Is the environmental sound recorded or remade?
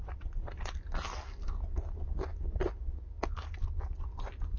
recorded